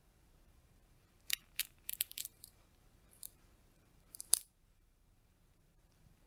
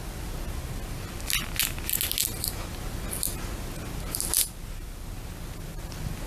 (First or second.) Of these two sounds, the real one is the second